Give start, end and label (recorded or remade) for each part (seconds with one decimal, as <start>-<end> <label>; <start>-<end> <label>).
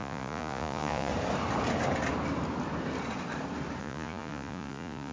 0.0-1.1 remade; 1.1-3.8 recorded; 3.8-5.1 remade